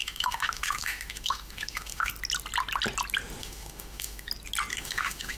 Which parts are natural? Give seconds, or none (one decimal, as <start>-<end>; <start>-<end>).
2.1-3.4; 4.3-4.7